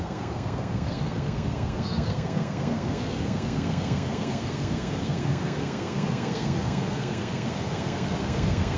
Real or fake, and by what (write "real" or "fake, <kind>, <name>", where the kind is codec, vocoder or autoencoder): fake, codec, SNAC